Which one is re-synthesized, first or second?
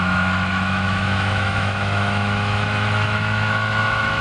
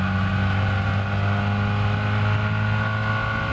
first